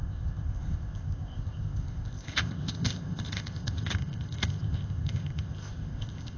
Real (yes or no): no